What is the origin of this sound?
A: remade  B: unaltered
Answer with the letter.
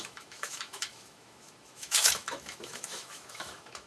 A